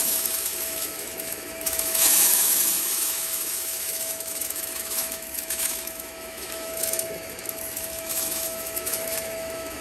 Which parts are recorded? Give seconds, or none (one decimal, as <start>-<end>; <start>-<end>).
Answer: none